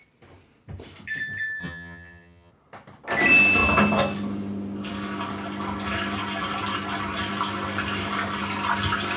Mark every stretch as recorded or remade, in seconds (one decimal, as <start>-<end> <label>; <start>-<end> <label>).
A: 0.0-1.6 recorded; 1.6-2.5 remade; 2.5-9.2 recorded